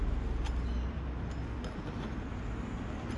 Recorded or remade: recorded